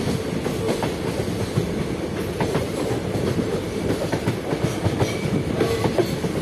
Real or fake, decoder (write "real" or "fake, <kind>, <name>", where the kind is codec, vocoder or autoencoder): real